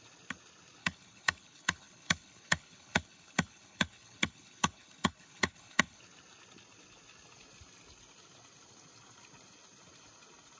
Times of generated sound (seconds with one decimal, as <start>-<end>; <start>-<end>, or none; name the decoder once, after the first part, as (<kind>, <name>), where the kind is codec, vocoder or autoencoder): 0.8-6.0 (codec, HILCodec)